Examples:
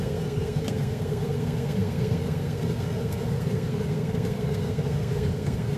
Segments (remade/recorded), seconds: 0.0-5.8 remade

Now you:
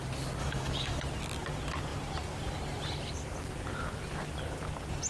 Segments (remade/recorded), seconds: 0.0-0.4 recorded; 0.4-1.0 remade; 1.0-5.1 recorded

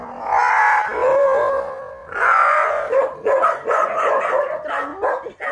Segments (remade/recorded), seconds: 0.0-2.0 recorded; 2.0-4.2 remade; 4.2-5.5 recorded

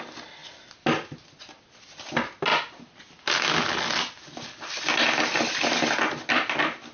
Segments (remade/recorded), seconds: 0.0-6.9 recorded

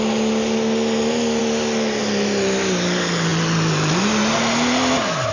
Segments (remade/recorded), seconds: 0.0-5.3 recorded

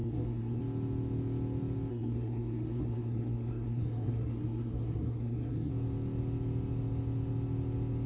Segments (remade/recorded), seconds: 0.0-0.6 remade; 0.6-1.9 recorded; 1.9-5.7 remade; 5.7-8.1 recorded